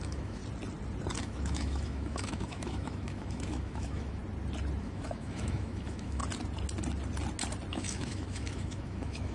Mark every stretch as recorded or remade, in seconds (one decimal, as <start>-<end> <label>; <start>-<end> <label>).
0.0-0.4 remade; 0.4-1.2 recorded; 1.2-4.2 remade; 4.2-4.8 recorded; 4.8-6.2 remade; 6.2-7.7 recorded; 7.7-9.3 remade